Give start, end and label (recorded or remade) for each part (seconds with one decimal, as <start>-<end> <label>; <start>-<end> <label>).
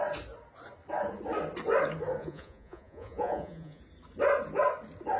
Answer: 0.0-2.2 recorded; 2.2-3.8 remade; 3.8-5.2 recorded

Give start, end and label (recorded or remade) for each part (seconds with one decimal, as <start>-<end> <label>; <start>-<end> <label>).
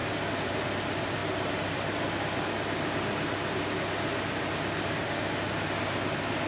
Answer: 0.0-6.5 recorded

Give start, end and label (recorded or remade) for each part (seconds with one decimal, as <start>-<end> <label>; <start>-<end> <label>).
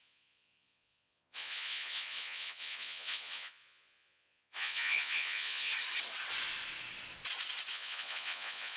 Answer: 0.0-5.7 remade; 5.7-7.7 recorded; 7.7-8.8 remade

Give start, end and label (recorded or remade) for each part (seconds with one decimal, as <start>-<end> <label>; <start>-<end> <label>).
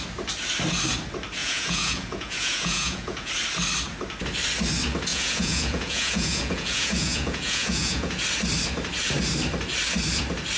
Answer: 0.0-1.4 recorded; 1.4-3.3 remade; 3.3-5.1 recorded; 5.1-8.2 remade; 8.2-10.6 recorded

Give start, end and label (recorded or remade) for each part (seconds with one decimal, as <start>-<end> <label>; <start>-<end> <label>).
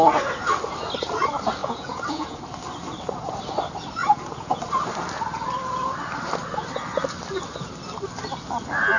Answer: 0.0-1.6 recorded; 1.6-2.4 remade; 2.4-4.0 recorded; 4.0-4.6 remade; 4.6-9.0 recorded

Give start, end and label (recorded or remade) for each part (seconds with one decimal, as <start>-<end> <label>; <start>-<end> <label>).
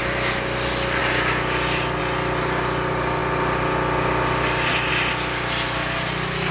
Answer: 0.0-6.5 recorded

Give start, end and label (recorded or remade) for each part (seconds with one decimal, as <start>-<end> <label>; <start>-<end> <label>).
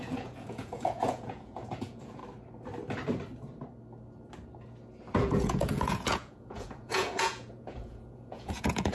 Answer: 0.0-2.2 remade; 2.2-5.2 recorded; 5.2-8.9 remade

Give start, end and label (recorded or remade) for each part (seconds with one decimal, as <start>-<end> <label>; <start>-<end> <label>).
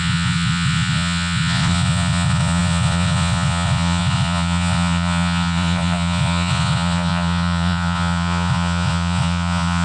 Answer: 0.0-9.8 remade